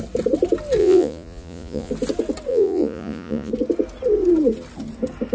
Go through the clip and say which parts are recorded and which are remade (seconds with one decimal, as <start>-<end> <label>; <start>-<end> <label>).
0.0-0.8 recorded; 0.8-1.9 remade; 1.9-2.5 recorded; 2.5-3.5 remade; 3.5-5.3 recorded